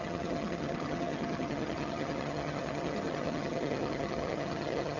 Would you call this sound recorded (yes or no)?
no